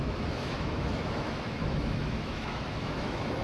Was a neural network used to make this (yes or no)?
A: yes